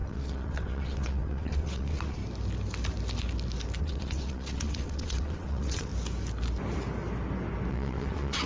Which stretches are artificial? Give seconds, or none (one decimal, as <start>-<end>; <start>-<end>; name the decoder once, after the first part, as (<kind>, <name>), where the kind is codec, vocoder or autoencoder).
0.0-2.2 (vocoder, WaveNeXt); 3.8-5.9; 7.7-8.5